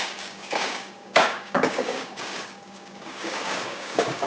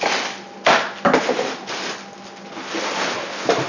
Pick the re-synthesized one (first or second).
first